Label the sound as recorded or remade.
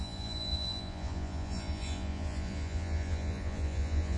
remade